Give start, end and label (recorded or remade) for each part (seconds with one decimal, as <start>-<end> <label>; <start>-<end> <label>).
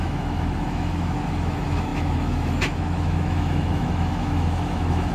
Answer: 0.0-5.1 remade